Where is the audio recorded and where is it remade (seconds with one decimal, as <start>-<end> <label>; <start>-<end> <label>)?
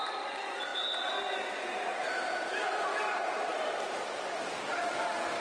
0.0-1.9 recorded; 1.9-3.7 remade; 3.7-5.4 recorded